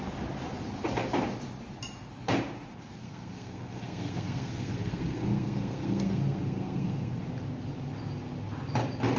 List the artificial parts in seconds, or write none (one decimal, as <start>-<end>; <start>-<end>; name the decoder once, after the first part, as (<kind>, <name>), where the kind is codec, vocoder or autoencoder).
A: 3.0-7.2 (codec, SNAC)